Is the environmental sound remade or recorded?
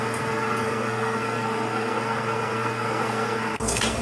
remade